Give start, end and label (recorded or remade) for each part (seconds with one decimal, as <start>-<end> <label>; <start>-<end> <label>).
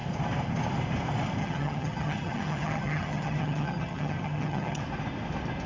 0.0-1.4 recorded; 1.4-4.8 remade; 4.8-5.7 recorded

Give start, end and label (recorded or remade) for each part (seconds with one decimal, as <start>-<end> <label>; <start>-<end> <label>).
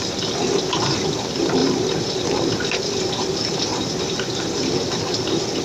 0.0-1.6 recorded; 1.6-2.4 remade; 2.4-3.7 recorded; 3.7-4.4 remade; 4.4-5.6 recorded